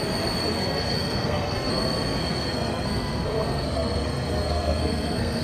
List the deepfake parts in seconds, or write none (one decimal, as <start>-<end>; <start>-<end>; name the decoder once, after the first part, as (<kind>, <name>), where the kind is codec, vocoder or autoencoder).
0.4-1.7 (codec, SNAC); 2.2-5.4

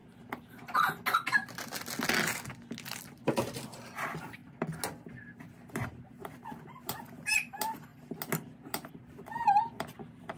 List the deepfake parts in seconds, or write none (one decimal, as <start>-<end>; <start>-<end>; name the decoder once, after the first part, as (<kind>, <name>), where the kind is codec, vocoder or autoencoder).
none

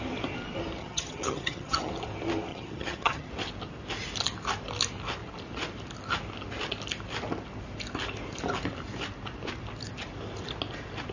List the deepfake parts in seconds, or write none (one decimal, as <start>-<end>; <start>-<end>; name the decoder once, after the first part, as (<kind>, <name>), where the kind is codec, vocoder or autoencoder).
0.8-1.9 (vocoder, HiFi-GAN); 2.5-3.3